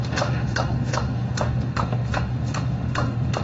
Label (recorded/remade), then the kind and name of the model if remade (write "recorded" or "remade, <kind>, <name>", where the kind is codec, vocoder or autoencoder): remade, autoencoder, DAC-VAE